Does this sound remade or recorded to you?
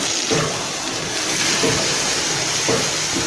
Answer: recorded